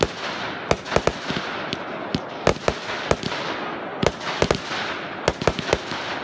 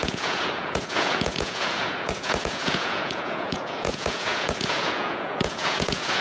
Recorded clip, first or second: first